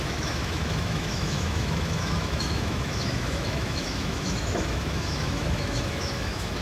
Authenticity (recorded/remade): remade